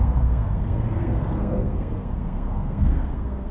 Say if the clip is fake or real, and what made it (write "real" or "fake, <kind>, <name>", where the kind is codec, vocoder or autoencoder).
fake, codec, SNAC